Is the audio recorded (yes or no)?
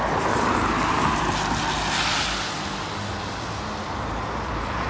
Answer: yes